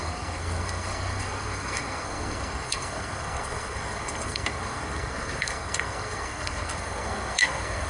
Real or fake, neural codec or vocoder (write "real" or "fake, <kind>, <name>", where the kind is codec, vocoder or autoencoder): fake, codec, SNAC